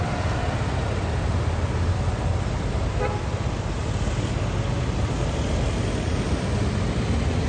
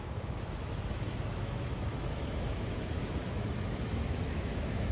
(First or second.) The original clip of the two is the first